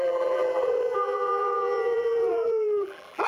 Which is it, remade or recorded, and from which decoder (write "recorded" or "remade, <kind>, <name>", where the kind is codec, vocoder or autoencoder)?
remade, vocoder, BigVGAN v2